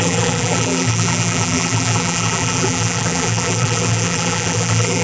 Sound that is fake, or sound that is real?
fake